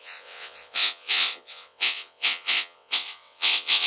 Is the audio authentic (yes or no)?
no